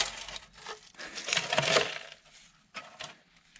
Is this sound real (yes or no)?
yes